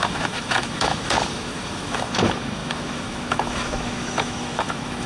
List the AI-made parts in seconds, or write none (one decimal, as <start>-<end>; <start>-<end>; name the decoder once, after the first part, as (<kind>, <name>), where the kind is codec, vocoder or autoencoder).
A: 0.0-5.1 (autoencoder, DAC-VAE)